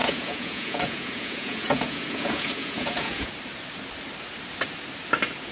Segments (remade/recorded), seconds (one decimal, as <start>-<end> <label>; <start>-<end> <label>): 0.0-3.3 remade; 3.3-5.5 recorded